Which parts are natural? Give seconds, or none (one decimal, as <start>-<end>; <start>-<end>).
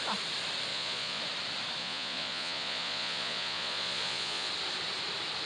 0.0-0.7; 1.2-1.8; 4.5-5.5